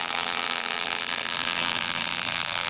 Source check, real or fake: fake